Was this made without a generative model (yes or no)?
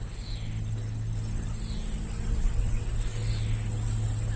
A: yes